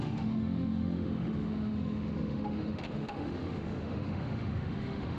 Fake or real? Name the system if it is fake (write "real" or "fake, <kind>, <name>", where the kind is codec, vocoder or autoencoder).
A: fake, autoencoder, DAC-VAE